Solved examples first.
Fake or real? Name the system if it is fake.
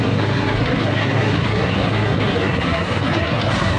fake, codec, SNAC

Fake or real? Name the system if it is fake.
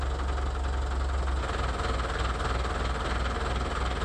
real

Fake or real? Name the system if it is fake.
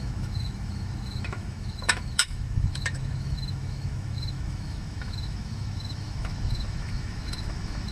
fake, autoencoder, DAC-VAE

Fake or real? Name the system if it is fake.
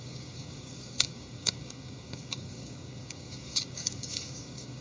fake, codec, DAC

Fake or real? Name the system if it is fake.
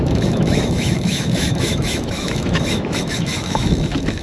fake, autoencoder, DAC-VAE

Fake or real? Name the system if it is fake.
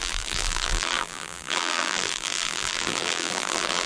fake, vocoder, BigVGAN v2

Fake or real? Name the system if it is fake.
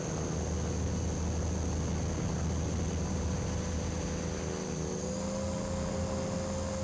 real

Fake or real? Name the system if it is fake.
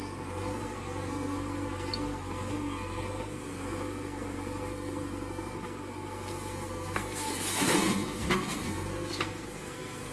fake, codec, SNAC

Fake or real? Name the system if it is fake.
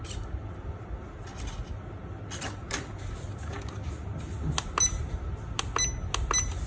real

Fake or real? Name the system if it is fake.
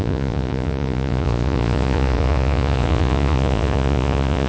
fake, vocoder, Vocos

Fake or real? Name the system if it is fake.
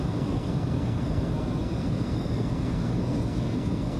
fake, codec, SNAC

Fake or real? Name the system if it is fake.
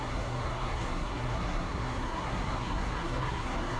fake, codec, SNAC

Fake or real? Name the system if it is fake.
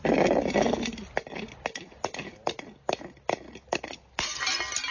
real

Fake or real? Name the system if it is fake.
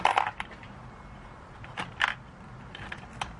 real